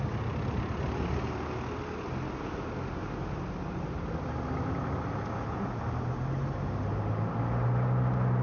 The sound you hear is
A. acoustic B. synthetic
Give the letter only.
A